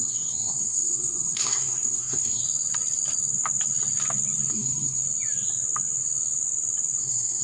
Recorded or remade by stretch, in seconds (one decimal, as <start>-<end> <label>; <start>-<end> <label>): 0.0-2.4 remade; 2.4-4.5 recorded; 4.5-5.0 remade; 5.0-7.0 recorded; 7.0-7.4 remade